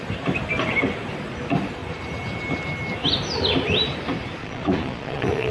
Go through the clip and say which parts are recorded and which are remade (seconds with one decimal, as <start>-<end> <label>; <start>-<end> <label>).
0.0-4.4 recorded; 4.4-5.5 remade